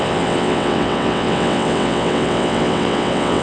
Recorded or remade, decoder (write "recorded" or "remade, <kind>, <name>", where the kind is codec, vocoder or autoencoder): remade, vocoder, WaveNeXt